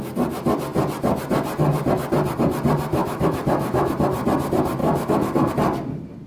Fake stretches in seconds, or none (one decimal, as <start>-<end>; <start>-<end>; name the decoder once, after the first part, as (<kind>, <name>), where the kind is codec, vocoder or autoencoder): 2.9-3.9 (autoencoder, DAC-VAE); 4.8-5.5